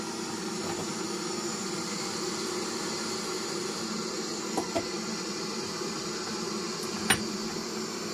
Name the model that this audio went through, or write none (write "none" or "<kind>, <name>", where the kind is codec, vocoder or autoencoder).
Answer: none